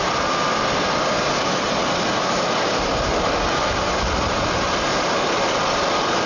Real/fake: real